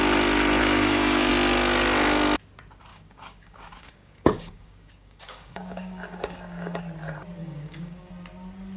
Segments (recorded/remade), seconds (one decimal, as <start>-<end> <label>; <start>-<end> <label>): 0.0-0.6 recorded; 0.6-1.3 remade; 1.3-2.9 recorded; 2.9-6.8 remade; 6.8-7.4 recorded; 7.4-8.1 remade; 8.1-8.8 recorded